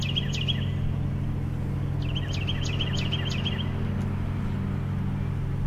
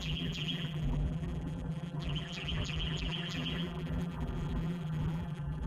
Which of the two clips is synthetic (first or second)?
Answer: second